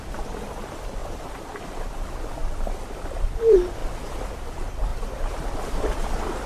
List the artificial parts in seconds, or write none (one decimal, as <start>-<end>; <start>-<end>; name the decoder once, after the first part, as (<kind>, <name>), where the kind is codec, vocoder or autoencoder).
0.0-2.4 (vocoder, BigVGAN v2); 3.3-3.8; 4.3-6.5